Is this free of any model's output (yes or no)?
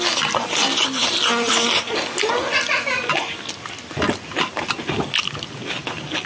yes